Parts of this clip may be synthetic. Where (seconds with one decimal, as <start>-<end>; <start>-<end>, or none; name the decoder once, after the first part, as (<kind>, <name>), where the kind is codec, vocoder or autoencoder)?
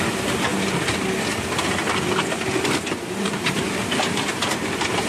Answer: 0.0-0.5 (vocoder, BigVGAN v2); 2.5-5.1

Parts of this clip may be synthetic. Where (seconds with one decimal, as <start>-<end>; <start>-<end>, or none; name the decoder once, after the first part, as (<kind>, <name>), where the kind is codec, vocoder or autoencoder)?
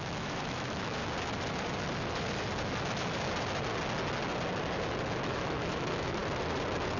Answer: 0.0-1.0 (autoencoder, DAC-VAE); 5.2-6.2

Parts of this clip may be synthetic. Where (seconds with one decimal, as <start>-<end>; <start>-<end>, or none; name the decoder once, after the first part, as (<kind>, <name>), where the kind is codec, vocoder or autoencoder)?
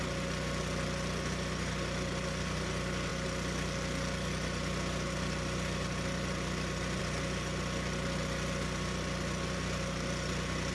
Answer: none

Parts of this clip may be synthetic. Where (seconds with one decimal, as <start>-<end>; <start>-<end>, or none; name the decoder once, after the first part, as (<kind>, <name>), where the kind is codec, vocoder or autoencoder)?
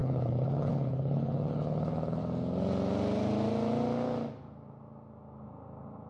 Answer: 0.0-2.2 (codec, HILCodec)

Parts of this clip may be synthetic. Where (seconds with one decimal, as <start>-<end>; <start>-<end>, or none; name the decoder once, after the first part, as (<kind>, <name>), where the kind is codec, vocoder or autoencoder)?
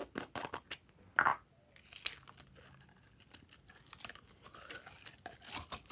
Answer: none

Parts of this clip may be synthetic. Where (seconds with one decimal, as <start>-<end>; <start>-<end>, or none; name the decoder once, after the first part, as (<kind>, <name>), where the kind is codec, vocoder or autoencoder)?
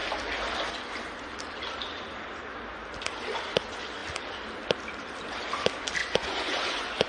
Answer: 6.0-7.1 (vocoder, Vocos)